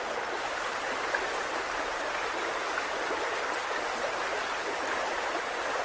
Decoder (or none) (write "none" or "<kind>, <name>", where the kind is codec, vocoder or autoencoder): none